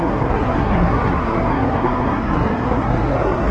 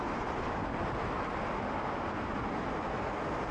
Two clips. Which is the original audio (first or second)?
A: second